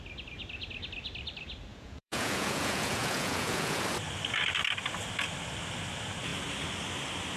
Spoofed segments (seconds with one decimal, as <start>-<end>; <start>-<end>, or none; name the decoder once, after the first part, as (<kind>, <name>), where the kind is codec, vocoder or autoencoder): 1.7-3.8 (vocoder, Vocos)